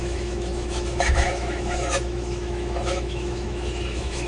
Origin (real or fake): fake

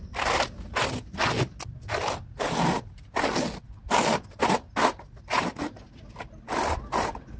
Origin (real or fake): real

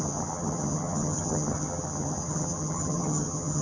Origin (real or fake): fake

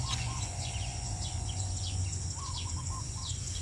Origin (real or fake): fake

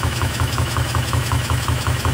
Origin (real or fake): fake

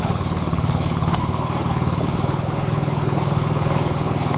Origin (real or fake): fake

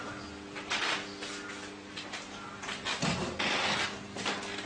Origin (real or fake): real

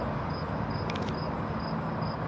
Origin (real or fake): real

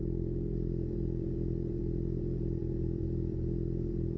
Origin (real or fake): fake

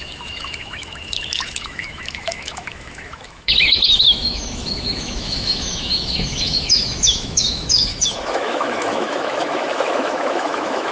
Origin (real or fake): fake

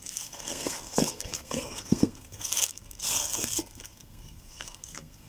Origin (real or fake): fake